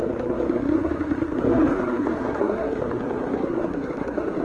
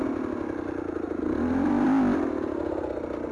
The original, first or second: second